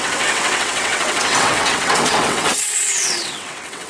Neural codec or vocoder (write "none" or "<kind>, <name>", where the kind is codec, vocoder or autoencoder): vocoder, WaveNeXt